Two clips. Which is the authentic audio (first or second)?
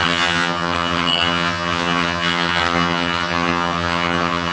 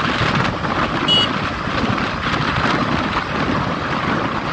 second